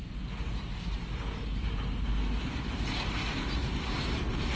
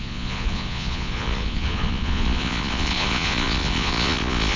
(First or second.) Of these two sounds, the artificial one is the second